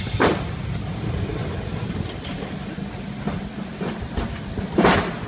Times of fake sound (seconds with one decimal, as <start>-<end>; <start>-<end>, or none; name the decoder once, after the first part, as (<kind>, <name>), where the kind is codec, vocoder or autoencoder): none